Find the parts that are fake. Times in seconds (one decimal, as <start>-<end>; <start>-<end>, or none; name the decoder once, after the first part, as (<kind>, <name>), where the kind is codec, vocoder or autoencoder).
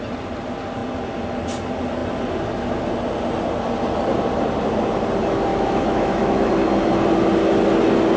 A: 5.5-6.5 (autoencoder, DAC-VAE)